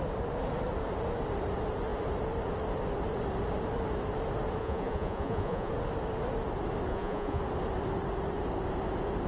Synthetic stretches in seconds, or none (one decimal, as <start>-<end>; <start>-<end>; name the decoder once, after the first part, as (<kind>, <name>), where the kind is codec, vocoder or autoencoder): 4.6-5.7 (vocoder, Vocos); 6.9-7.4